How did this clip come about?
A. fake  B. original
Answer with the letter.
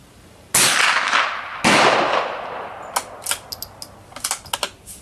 B